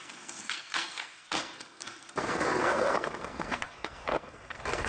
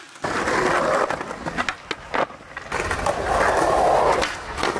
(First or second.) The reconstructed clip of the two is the first